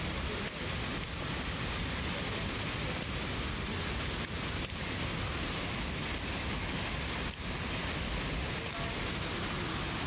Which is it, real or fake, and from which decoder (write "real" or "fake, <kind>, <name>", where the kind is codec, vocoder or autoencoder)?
real